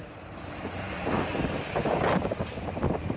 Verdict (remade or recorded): remade